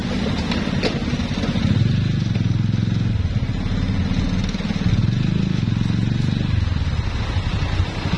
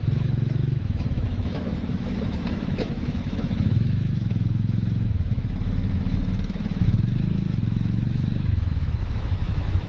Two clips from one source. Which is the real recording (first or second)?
first